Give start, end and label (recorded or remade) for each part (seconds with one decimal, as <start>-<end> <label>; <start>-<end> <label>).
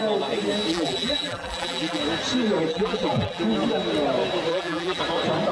0.0-0.7 recorded; 0.7-2.0 remade; 2.0-2.7 recorded; 2.7-3.4 remade; 3.4-4.5 recorded; 4.5-5.0 remade; 5.0-5.5 recorded